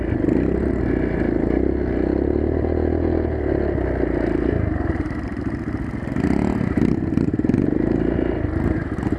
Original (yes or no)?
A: yes